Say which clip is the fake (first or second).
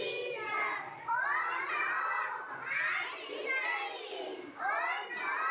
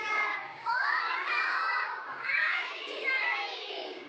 second